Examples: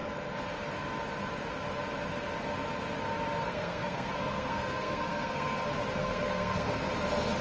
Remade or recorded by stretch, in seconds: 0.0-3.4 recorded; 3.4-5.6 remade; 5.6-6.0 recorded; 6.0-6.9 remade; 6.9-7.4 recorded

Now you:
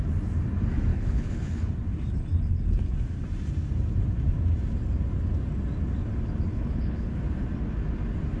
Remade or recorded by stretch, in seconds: 0.0-0.9 recorded; 0.9-1.7 remade; 1.7-6.5 recorded; 6.5-7.2 remade; 7.2-8.4 recorded